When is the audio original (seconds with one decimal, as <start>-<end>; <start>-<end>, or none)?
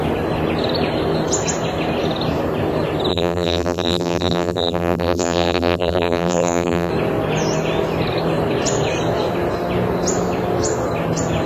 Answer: 0.0-3.1; 6.9-11.5